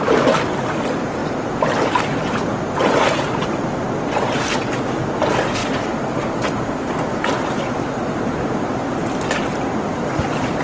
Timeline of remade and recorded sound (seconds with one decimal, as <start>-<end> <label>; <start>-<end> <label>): 0.0-5.6 recorded; 5.6-7.8 remade; 7.8-9.0 recorded; 9.0-10.6 remade